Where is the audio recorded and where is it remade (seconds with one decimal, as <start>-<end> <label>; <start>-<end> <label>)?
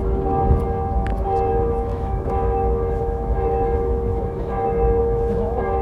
0.0-1.5 recorded; 1.5-5.8 remade